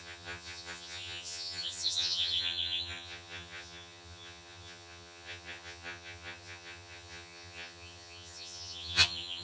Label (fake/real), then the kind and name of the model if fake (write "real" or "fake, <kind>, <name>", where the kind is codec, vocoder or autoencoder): fake, vocoder, HiFi-GAN